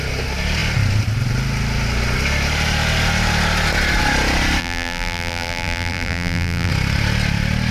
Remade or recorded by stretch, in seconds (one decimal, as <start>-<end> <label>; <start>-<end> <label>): 0.0-4.6 recorded; 4.6-6.7 remade; 6.7-7.7 recorded